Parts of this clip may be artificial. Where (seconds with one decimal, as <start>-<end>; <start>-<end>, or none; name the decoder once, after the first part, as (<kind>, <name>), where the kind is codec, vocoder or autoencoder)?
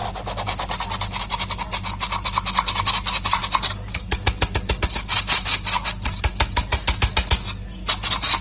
none